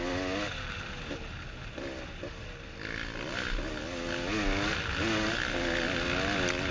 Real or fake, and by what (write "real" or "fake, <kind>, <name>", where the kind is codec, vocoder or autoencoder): real